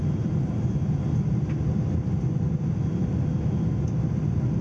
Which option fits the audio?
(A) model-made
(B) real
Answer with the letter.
B